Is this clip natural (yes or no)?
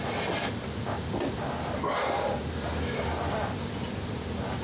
yes